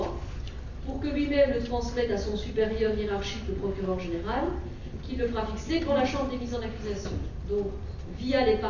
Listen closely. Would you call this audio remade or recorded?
recorded